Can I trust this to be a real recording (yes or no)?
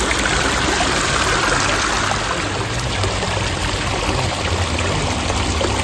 yes